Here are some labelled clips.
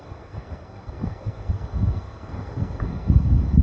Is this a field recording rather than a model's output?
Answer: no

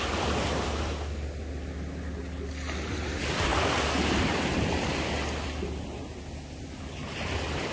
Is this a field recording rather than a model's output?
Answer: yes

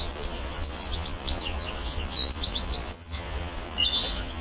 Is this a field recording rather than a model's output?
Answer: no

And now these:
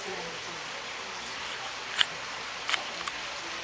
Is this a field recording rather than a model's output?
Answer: yes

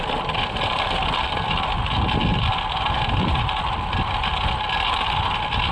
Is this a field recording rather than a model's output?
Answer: yes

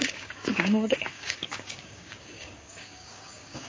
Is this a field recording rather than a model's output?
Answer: no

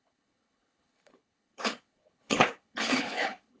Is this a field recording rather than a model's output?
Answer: no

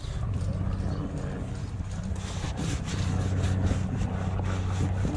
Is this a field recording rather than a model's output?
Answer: yes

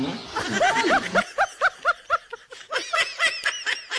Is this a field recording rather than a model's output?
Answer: yes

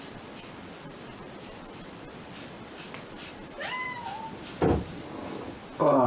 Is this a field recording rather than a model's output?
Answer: yes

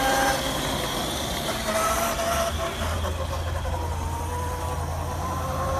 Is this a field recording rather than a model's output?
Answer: yes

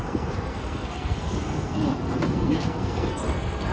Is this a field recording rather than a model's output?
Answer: no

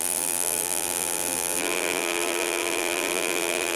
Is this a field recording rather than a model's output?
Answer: no